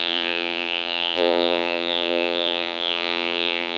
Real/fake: fake